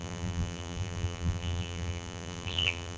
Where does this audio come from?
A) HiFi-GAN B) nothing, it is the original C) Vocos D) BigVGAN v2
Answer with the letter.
D